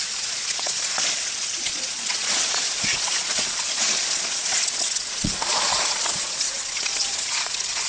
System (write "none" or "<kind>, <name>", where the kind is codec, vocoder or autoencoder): vocoder, Vocos